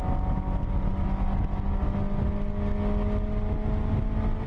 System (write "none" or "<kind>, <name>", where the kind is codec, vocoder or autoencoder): none